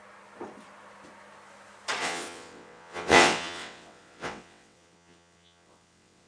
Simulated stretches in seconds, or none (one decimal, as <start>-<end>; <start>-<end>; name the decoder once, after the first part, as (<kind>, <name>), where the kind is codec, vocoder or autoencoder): 2.0-6.3 (vocoder, WaveNeXt)